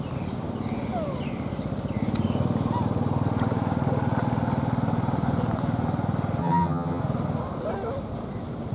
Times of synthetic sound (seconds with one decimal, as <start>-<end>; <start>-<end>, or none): 6.4-7.0